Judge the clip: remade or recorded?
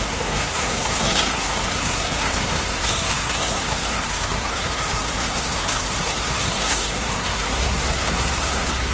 remade